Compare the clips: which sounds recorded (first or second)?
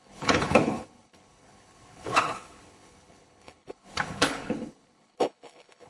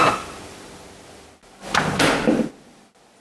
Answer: second